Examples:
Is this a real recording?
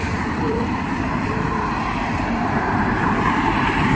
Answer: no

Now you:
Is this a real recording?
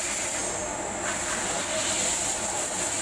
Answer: yes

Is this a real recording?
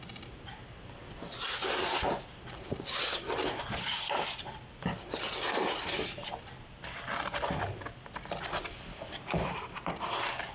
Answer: yes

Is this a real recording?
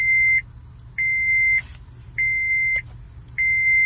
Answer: yes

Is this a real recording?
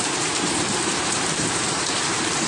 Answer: no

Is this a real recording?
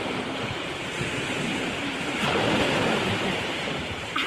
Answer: no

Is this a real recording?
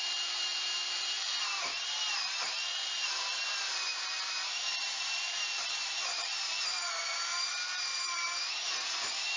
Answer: no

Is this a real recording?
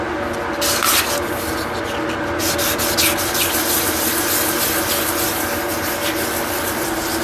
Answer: yes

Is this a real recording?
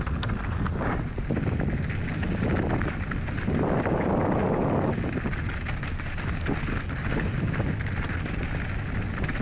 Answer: yes